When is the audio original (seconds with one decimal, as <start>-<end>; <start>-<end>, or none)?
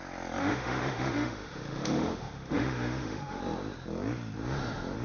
0.0-0.4; 3.4-5.0